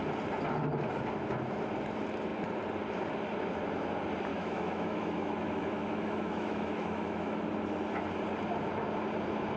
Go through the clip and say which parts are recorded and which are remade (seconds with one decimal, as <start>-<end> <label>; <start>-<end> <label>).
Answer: 0.0-4.3 recorded; 4.3-7.5 remade; 7.5-9.6 recorded